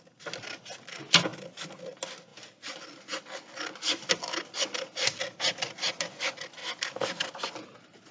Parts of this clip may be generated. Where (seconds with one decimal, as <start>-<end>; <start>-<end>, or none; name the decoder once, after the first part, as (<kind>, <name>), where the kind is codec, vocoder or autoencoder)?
1.3-1.8 (vocoder, BigVGAN v2)